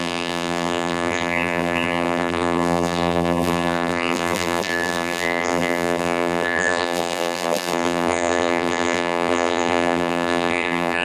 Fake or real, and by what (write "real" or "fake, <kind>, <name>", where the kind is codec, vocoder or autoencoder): fake, vocoder, BigVGAN v2